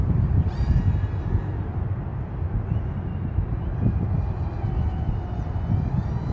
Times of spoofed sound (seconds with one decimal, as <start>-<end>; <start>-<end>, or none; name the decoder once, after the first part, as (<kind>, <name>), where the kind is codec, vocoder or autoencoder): none